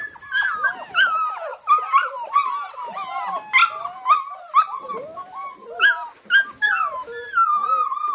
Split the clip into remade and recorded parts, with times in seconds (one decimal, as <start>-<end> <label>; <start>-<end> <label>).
0.0-8.1 recorded

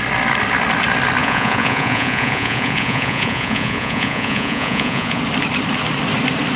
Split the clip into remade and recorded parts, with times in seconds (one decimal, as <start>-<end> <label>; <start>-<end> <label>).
0.0-1.2 recorded; 1.2-5.2 remade; 5.2-6.6 recorded

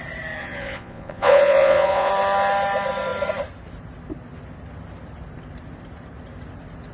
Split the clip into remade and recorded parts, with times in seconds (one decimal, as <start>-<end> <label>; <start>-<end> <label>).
0.0-0.4 recorded; 0.4-2.1 remade; 2.1-6.9 recorded